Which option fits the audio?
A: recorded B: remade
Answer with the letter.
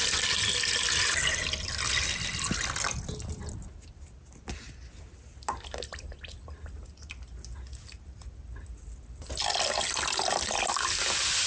A